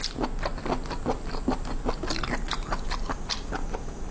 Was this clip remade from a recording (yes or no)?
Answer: no